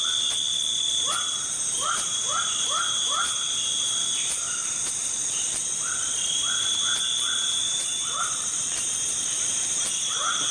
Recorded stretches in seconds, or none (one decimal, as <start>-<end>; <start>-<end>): 0.0-4.6; 5.6-7.6; 9.6-10.5